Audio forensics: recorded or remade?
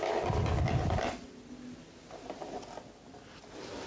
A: recorded